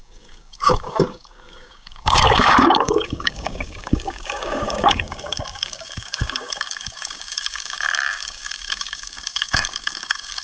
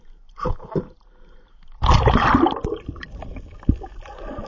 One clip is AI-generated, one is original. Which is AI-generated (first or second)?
first